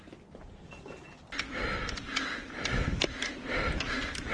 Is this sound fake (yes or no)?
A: no